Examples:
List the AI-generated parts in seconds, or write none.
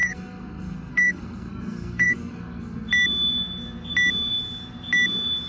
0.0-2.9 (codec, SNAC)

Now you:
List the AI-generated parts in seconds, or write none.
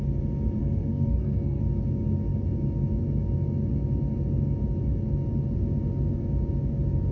0.6-1.6 (codec, SNAC)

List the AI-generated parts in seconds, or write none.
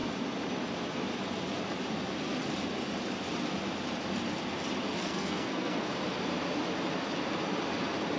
4.9-5.9 (codec, SNAC)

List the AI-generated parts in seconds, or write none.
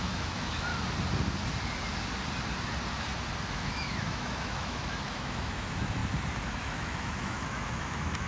0.0-0.7 (autoencoder, DAC-VAE); 3.5-6.0; 6.5-8.3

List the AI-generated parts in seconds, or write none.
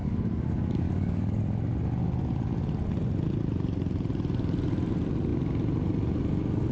0.0-1.4 (codec, DAC)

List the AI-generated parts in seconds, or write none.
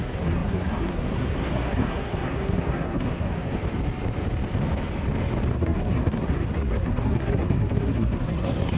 0.0-3.5 (codec, SNAC); 5.5-8.8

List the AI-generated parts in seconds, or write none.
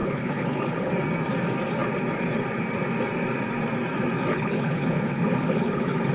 0.0-0.9 (codec, HILCodec); 4.3-6.1